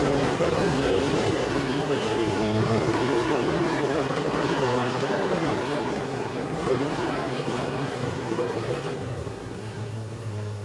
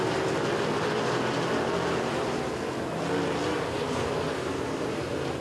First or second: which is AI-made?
first